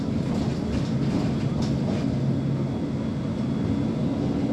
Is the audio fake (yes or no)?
no